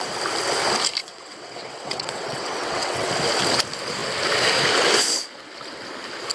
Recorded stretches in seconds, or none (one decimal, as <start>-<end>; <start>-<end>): 0.0-1.0; 3.1-6.3

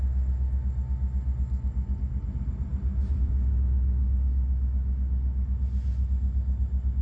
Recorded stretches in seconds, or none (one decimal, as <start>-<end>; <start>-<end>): 0.0-2.7; 3.3-7.0